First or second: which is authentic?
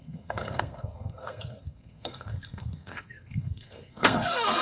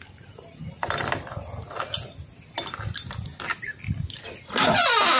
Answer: second